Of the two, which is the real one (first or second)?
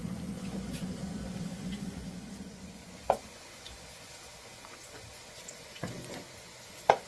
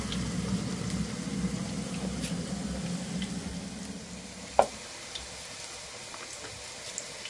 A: second